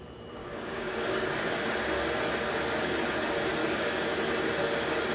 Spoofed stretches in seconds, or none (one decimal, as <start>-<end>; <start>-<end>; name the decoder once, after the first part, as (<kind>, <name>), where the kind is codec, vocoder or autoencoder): 0.4-1.4 (codec, DAC); 3.6-4.2